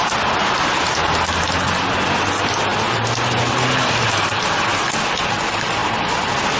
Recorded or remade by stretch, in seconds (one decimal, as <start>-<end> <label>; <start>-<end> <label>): 0.0-2.7 recorded; 2.7-4.6 remade; 4.6-6.6 recorded